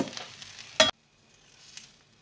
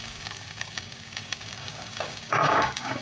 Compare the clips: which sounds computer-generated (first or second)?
second